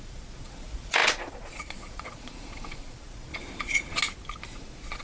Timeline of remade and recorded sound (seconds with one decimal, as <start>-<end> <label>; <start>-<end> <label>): 0.0-4.0 remade; 4.0-4.5 recorded; 4.5-5.0 remade